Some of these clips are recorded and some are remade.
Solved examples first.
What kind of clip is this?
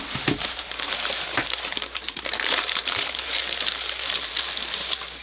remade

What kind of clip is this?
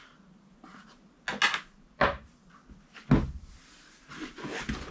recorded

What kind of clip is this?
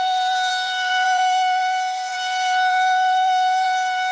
remade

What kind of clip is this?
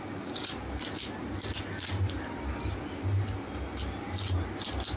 recorded